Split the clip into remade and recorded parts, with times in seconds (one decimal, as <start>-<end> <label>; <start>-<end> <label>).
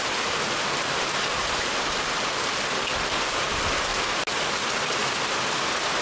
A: 0.0-1.4 remade; 1.4-3.3 recorded; 3.3-3.9 remade; 3.9-6.0 recorded